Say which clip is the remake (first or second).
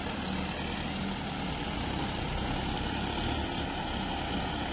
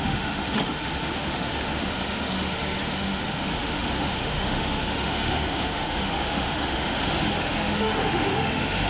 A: second